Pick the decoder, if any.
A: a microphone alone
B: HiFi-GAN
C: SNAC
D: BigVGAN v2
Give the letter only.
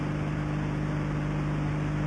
A